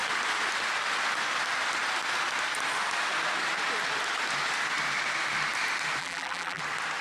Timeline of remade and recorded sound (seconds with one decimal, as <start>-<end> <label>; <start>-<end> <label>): 0.0-6.0 recorded; 6.0-6.6 remade; 6.6-7.0 recorded